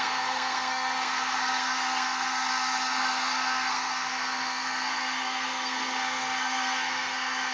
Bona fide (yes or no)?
no